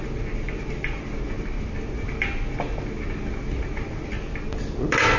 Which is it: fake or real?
real